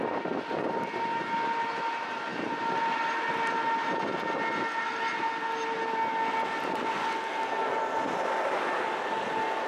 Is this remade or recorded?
recorded